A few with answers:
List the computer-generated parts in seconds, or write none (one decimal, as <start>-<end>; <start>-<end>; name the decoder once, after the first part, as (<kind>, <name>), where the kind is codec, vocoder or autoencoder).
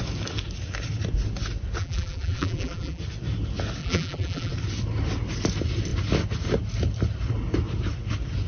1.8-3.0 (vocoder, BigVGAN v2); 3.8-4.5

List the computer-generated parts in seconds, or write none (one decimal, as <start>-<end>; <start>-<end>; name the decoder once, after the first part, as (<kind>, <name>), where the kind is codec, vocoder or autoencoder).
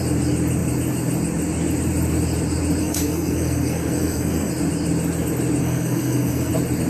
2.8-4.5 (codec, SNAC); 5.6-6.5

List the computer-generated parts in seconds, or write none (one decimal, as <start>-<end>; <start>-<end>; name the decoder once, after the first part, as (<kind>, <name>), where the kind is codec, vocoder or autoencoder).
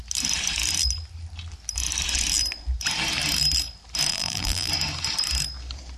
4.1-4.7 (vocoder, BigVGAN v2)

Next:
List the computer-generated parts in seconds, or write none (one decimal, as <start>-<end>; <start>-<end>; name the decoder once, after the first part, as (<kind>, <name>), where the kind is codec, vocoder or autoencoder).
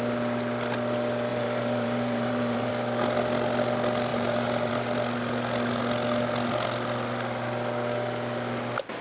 1.3-2.7 (vocoder, BigVGAN v2); 4.1-4.7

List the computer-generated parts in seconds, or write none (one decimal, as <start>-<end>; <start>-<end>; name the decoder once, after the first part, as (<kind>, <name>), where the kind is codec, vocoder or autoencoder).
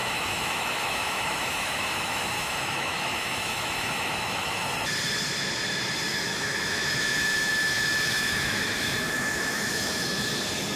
0.0-4.6 (autoencoder, DAC-VAE); 6.1-10.4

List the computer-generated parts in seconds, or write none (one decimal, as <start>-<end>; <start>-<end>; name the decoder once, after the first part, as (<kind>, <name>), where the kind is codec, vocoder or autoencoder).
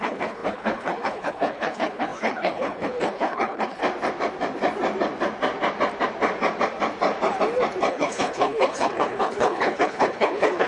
0.0-3.8 (codec, HILCodec); 7.9-10.7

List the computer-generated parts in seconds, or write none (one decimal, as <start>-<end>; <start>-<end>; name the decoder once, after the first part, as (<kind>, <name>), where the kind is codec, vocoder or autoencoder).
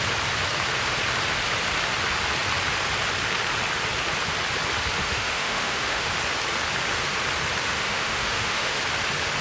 5.0-6.1 (autoencoder, DAC-VAE); 7.6-8.8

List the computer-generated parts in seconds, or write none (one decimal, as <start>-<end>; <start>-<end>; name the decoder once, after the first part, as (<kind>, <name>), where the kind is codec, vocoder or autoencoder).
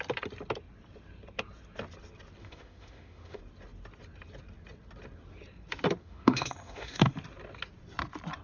2.4-3.4 (autoencoder, DAC-VAE); 6.0-7.1